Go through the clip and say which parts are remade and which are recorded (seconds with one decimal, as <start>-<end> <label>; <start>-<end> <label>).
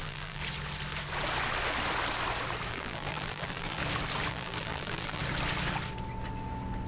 0.0-0.4 remade; 0.4-2.7 recorded; 2.7-3.8 remade; 3.8-4.3 recorded; 4.3-5.2 remade; 5.2-6.9 recorded